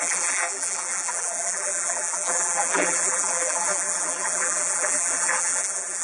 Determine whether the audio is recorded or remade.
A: remade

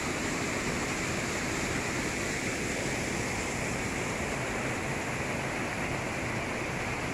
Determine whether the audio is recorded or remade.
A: recorded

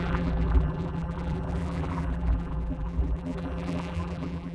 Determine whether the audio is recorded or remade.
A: remade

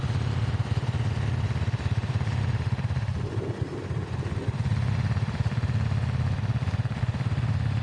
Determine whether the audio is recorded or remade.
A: recorded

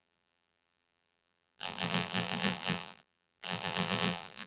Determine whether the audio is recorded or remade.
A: remade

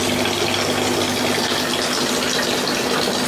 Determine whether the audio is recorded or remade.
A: recorded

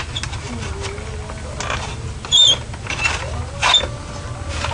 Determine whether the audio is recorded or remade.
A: recorded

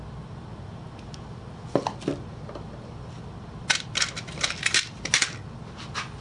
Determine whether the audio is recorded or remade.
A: recorded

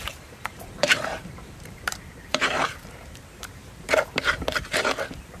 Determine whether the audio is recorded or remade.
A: remade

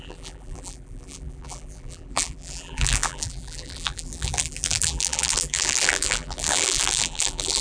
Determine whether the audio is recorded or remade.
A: remade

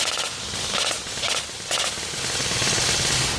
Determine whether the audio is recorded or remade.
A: recorded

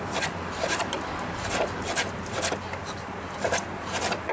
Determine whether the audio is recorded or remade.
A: remade